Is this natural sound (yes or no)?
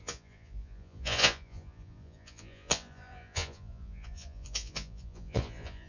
no